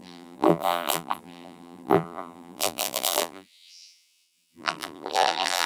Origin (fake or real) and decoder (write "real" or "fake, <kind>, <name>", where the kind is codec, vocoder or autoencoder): fake, vocoder, BigVGAN v2